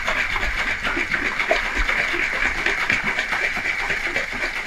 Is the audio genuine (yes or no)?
yes